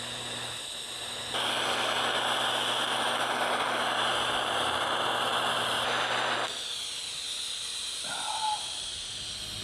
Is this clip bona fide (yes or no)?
yes